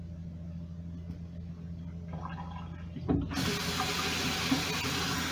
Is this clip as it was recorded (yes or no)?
yes